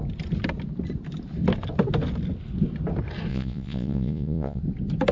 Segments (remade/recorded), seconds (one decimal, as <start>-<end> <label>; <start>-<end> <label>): 0.0-3.3 recorded; 3.3-4.6 remade; 4.6-5.1 recorded